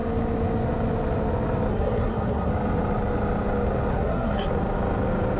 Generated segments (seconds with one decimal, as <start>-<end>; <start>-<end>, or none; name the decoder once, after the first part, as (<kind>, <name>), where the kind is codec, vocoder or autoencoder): 1.7-2.5 (codec, SNAC); 3.9-4.5